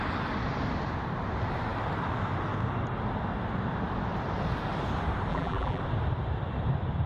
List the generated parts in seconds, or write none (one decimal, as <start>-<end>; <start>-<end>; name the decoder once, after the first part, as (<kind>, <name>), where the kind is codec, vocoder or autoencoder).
5.3-5.8 (vocoder, BigVGAN v2)